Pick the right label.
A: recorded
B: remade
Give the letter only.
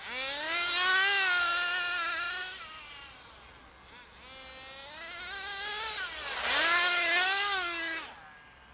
A